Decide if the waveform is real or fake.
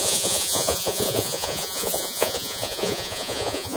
fake